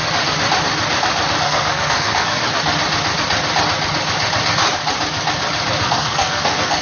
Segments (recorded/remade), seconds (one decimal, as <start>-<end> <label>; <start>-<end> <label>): 0.0-1.4 recorded; 1.4-2.4 remade; 2.4-5.8 recorded; 5.8-6.8 remade